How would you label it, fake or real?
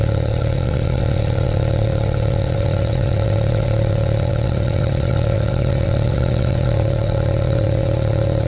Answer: fake